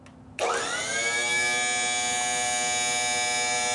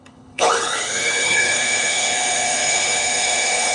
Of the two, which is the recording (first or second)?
first